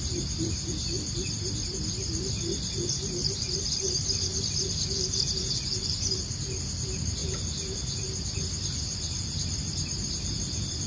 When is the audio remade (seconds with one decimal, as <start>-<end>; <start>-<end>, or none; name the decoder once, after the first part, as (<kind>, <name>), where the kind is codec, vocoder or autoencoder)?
none